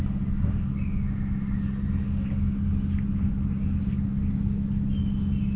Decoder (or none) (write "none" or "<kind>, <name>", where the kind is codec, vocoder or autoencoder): none